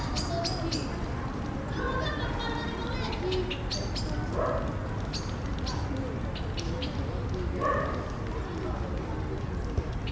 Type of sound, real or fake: real